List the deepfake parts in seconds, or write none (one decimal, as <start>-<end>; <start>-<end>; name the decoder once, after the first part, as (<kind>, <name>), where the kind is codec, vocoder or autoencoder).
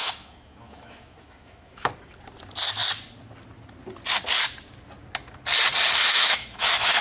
0.0-1.9 (autoencoder, DAC-VAE); 6.0-7.0